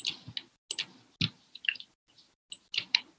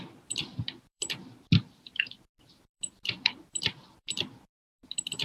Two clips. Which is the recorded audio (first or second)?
first